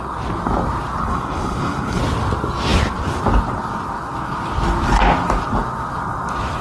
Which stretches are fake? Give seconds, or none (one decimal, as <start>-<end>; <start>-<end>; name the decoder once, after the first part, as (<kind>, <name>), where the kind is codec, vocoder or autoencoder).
1.0-2.0 (codec, HILCodec)